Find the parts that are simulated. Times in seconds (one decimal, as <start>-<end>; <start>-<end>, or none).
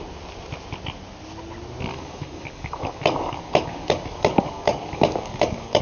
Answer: 1.9-5.8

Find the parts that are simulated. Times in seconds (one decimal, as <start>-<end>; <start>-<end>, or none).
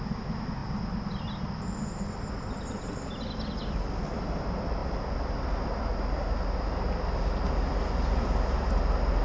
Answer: none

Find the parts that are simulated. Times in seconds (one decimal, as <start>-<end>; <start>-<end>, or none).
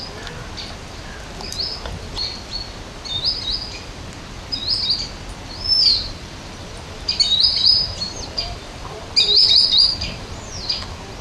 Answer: 5.9-10.4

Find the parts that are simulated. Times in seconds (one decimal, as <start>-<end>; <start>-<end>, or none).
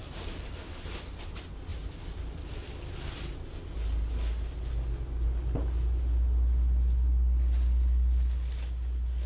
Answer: 1.7-2.8